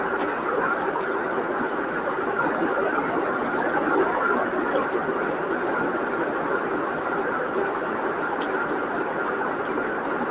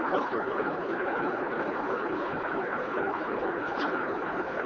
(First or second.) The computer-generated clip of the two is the second